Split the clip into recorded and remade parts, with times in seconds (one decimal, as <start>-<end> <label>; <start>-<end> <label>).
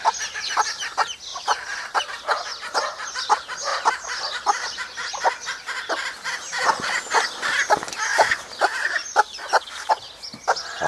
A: 0.0-1.3 recorded; 1.3-2.0 remade; 2.0-3.7 recorded; 3.7-5.1 remade; 5.1-8.1 recorded; 8.1-9.9 remade; 9.9-10.9 recorded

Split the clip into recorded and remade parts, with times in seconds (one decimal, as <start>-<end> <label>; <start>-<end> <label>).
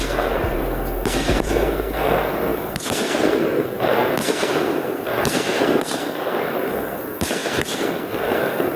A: 0.0-8.8 remade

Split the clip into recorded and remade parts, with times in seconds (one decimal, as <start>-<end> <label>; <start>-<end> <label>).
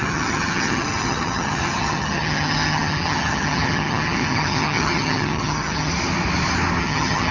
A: 0.0-5.9 remade; 5.9-6.8 recorded; 6.8-7.3 remade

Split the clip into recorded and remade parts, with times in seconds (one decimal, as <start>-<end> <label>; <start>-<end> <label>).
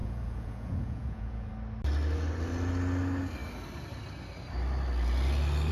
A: 0.0-1.5 remade; 1.5-5.7 recorded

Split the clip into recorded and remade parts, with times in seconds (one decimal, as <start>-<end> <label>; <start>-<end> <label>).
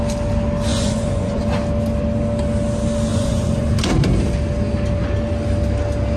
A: 0.0-0.7 recorded; 0.7-1.4 remade; 1.4-3.1 recorded; 3.1-3.7 remade; 3.7-6.2 recorded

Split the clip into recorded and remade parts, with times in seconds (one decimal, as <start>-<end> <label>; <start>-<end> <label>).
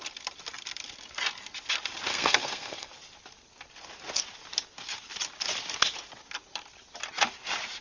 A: 0.0-2.1 recorded; 2.1-2.9 remade; 2.9-7.8 recorded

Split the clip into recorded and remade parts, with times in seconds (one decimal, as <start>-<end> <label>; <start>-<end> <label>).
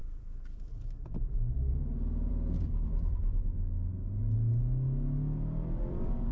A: 0.0-1.7 remade; 1.7-2.3 recorded; 2.3-3.2 remade; 3.2-5.8 recorded; 5.8-6.3 remade